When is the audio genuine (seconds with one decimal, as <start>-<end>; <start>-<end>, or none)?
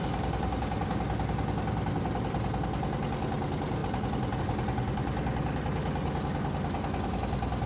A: 0.0-7.7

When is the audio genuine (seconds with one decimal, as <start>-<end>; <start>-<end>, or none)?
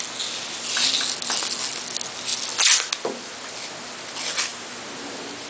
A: 0.0-5.5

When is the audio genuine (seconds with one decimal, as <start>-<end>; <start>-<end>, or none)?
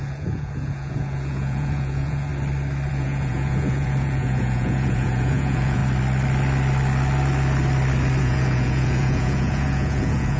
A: 2.3-2.9; 5.8-8.2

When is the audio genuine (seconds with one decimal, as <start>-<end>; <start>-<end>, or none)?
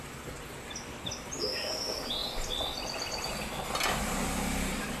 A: 0.0-5.0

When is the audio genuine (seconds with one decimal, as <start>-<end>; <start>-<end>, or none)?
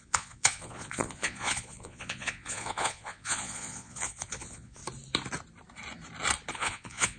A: 4.8-6.5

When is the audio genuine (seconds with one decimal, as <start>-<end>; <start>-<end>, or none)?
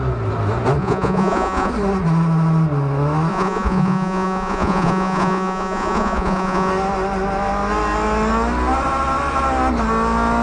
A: 0.0-0.8; 1.7-3.3; 6.7-10.4